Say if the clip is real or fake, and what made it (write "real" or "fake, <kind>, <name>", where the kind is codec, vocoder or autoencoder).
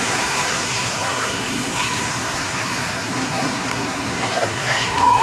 fake, codec, SNAC